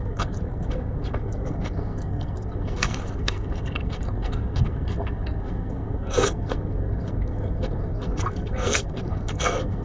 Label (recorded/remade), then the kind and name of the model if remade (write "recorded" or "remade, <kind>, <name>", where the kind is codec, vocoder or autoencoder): remade, codec, SNAC